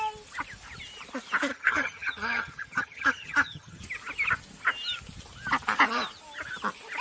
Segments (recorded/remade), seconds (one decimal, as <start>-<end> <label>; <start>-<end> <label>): 0.0-1.5 recorded; 1.5-3.8 remade; 3.8-7.0 recorded